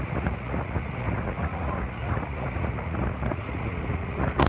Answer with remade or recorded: remade